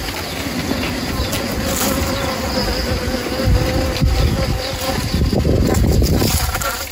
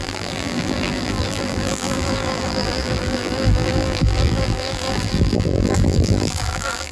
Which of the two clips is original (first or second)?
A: first